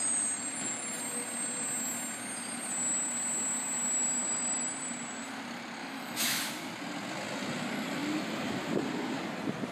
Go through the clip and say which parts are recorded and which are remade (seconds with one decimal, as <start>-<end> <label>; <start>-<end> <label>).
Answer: 0.0-5.8 recorded; 5.8-6.5 remade; 6.5-9.7 recorded

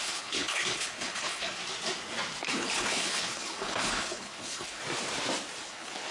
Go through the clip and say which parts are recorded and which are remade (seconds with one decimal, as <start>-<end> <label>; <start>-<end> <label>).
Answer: 0.0-1.6 remade; 1.6-2.5 recorded; 2.5-4.8 remade; 4.8-5.6 recorded; 5.6-6.1 remade

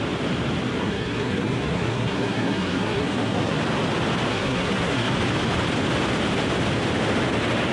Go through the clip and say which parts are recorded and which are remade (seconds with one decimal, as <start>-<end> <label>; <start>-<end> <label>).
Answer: 0.0-0.8 recorded; 0.8-3.6 remade; 3.6-4.3 recorded; 4.3-5.1 remade; 5.1-7.7 recorded